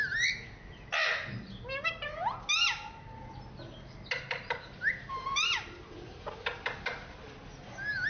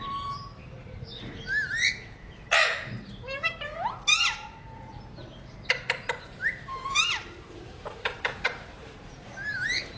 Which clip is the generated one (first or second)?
second